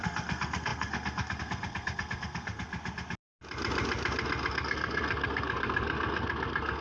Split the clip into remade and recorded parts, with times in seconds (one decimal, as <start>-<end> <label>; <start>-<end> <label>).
0.0-2.7 remade; 2.7-4.5 recorded; 4.5-6.8 remade